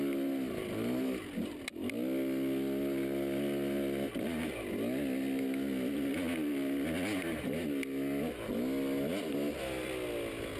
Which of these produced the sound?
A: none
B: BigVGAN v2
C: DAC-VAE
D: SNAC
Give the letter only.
A